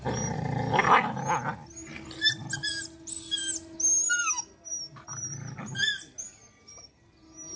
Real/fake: real